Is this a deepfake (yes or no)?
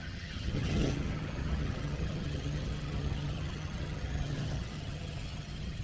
yes